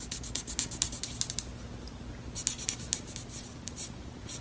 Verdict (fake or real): real